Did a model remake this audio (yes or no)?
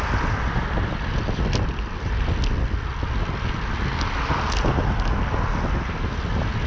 no